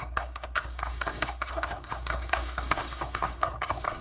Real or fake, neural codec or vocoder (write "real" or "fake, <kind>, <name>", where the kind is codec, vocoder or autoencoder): fake, codec, SNAC